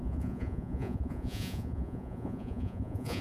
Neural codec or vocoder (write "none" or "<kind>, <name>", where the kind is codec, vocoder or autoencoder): vocoder, Vocos